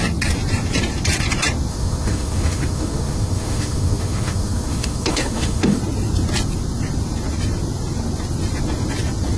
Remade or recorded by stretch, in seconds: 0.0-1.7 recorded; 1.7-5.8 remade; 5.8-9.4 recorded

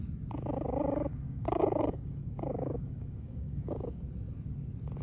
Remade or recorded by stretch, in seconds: 0.0-1.1 recorded; 1.1-4.0 remade; 4.0-5.0 recorded

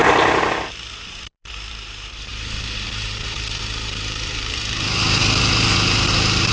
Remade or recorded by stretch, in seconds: 0.0-6.5 remade

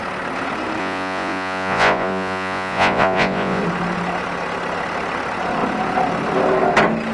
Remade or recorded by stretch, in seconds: 0.0-0.8 recorded; 0.8-3.6 remade; 3.6-7.1 recorded

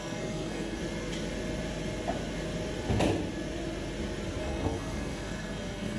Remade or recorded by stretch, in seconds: 0.0-0.8 remade; 0.8-4.4 recorded; 4.4-6.0 remade

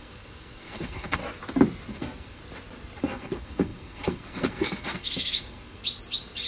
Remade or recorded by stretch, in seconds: 0.0-1.2 remade; 1.2-1.9 recorded; 1.9-2.4 remade; 2.4-3.0 recorded; 3.0-5.8 remade; 5.8-6.5 recorded